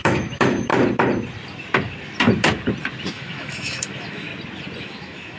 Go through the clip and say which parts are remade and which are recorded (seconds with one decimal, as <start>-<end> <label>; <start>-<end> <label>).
0.0-0.7 remade; 0.7-3.1 recorded; 3.1-4.3 remade; 4.3-4.8 recorded; 4.8-5.4 remade

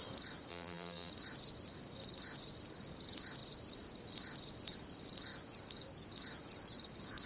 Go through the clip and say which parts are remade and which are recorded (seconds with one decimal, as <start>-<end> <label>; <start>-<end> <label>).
0.0-0.5 recorded; 0.5-1.1 remade; 1.1-7.3 recorded

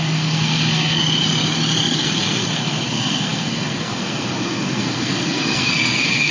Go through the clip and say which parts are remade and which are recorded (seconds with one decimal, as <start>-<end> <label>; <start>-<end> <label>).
0.0-1.0 remade; 1.0-2.0 recorded; 2.0-6.3 remade